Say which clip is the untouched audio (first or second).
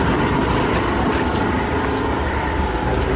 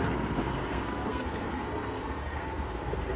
first